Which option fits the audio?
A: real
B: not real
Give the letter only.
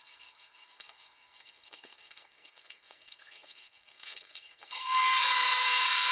B